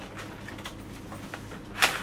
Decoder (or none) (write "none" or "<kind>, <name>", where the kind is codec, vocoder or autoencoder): none